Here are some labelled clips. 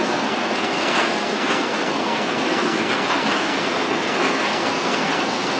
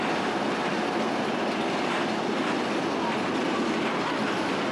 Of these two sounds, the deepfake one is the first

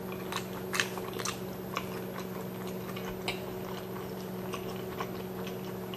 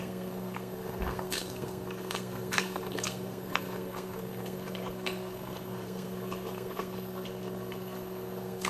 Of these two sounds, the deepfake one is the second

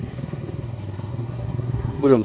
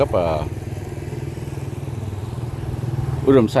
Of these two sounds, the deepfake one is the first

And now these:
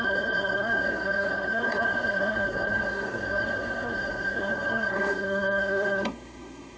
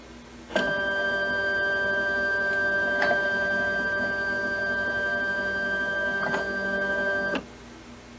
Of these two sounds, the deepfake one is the first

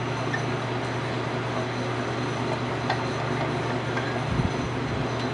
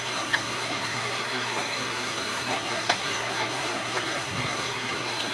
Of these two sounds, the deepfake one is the second